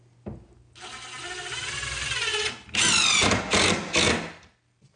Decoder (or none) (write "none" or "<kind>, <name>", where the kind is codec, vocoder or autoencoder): none